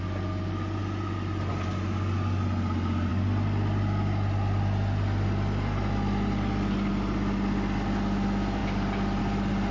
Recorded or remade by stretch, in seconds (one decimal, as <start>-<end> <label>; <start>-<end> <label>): 0.0-0.8 recorded; 0.8-1.5 remade; 1.5-9.7 recorded